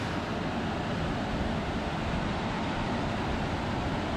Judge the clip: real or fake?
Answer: real